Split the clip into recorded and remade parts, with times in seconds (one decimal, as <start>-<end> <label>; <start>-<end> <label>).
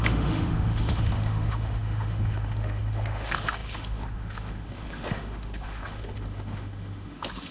0.0-7.5 remade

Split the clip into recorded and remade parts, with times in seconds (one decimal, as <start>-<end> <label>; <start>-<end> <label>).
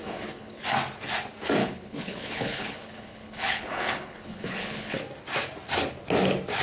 0.0-0.6 remade; 0.6-1.6 recorded; 1.6-5.0 remade; 5.0-6.6 recorded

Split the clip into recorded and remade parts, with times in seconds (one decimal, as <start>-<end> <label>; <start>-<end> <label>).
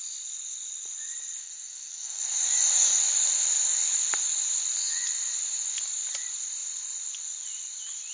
0.0-1.4 recorded; 1.4-2.2 remade; 2.2-8.1 recorded